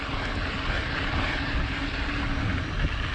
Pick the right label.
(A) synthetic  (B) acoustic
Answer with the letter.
B